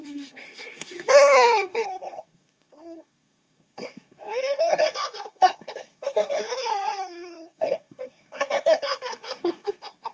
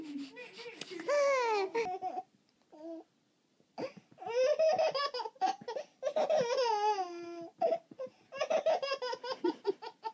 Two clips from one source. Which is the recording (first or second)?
second